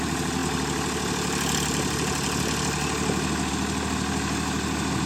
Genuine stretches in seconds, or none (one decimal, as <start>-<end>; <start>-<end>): 0.0-5.1